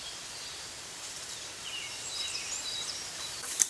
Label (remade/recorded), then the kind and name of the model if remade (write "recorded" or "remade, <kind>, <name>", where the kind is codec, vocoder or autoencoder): remade, vocoder, BigVGAN v2